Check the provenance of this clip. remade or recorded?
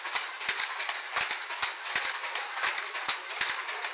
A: recorded